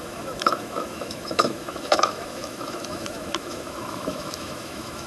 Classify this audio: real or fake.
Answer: fake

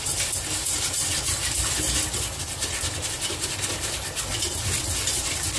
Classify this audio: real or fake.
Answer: real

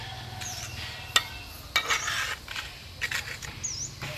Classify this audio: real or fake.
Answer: real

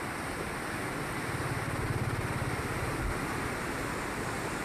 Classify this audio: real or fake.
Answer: real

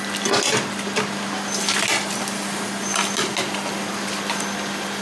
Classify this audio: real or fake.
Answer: real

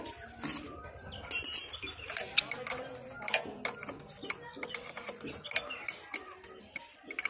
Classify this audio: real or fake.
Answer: real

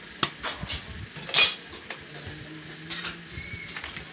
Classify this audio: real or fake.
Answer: real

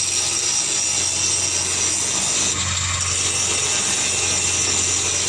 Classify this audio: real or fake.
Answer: real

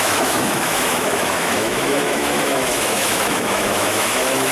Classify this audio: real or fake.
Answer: fake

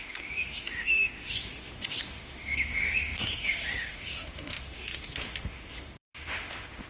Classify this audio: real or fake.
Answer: fake